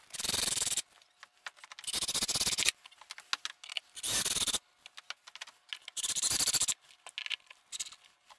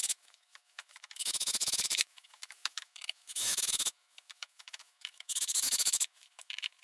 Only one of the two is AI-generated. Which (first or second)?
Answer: second